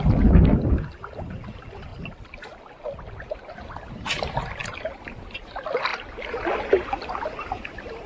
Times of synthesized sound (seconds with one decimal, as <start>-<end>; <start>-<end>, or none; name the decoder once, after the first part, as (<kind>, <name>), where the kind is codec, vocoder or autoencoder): none